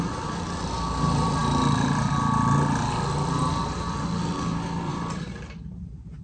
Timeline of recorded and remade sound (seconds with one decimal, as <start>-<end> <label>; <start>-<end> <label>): 0.0-6.2 recorded